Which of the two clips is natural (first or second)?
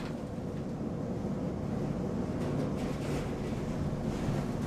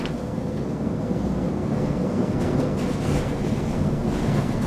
first